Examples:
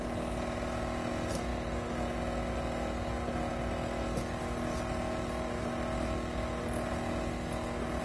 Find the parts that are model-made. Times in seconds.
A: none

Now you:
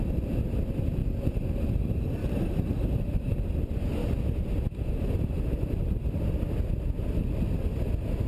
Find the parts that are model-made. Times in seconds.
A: 2.2-3.3 (vocoder, BigVGAN v2)